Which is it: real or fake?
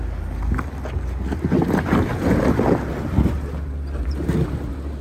real